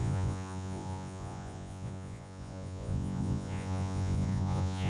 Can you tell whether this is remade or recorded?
remade